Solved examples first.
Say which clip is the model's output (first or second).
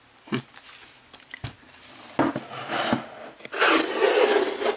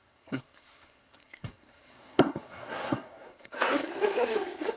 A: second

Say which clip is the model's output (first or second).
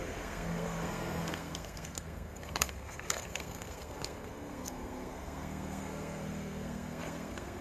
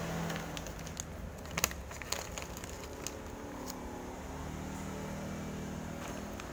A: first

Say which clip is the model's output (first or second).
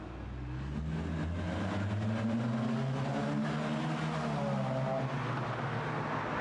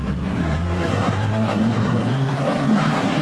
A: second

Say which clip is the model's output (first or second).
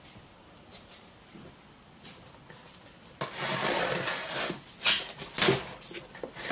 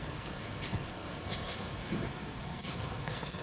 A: second